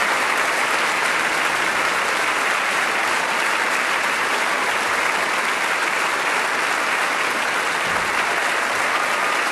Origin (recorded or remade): recorded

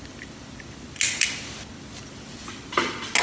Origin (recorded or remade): recorded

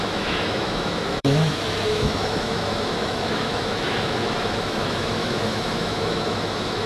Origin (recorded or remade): remade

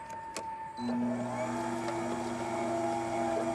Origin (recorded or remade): recorded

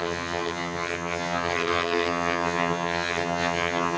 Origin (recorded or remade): remade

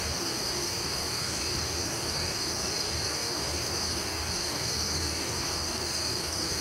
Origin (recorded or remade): remade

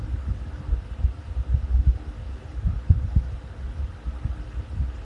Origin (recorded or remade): recorded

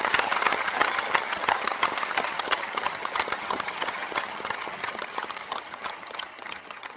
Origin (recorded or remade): remade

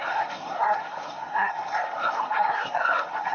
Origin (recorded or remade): remade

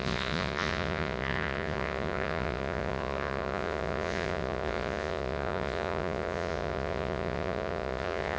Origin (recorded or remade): remade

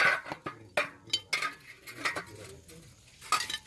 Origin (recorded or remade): recorded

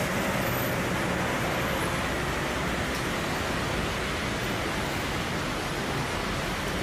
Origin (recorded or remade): recorded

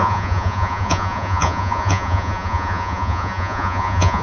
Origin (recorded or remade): remade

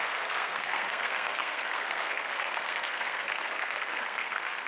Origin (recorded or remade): remade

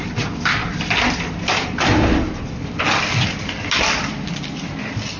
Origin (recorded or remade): recorded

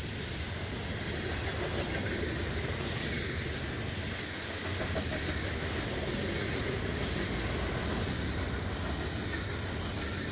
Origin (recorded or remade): recorded